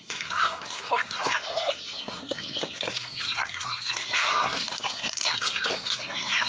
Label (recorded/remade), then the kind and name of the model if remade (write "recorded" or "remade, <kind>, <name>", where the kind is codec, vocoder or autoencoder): remade, codec, SNAC